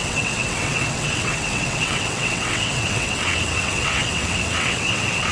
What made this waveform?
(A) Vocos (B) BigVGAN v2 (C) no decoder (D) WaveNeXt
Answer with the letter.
D